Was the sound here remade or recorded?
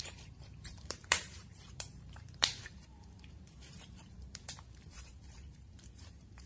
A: remade